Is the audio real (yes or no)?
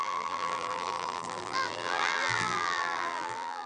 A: no